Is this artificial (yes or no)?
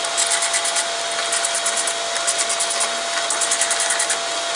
no